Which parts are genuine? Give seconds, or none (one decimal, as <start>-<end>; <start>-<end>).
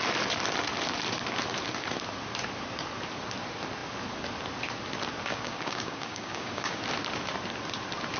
0.0-5.3; 6.8-8.2